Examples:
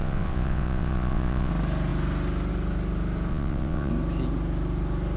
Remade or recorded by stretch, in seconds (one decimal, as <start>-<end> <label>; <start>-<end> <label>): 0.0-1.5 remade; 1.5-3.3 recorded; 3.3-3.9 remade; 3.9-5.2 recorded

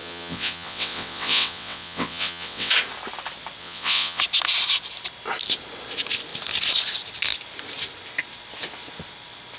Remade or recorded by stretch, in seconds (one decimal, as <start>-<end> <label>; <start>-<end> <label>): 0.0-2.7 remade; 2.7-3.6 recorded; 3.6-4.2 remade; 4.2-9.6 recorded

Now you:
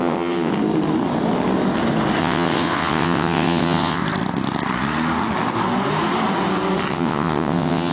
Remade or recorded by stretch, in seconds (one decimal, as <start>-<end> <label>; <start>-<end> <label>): 0.0-0.5 remade; 0.5-2.2 recorded; 2.2-4.0 remade; 4.0-6.9 recorded; 6.9-7.9 remade

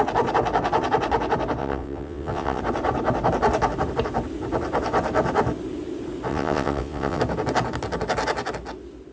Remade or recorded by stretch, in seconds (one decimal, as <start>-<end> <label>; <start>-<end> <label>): 0.0-1.6 recorded; 1.6-2.6 remade; 2.6-6.3 recorded; 6.3-7.2 remade; 7.2-9.1 recorded